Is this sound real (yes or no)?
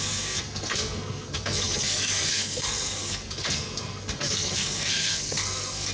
no